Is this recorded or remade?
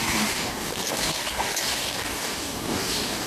remade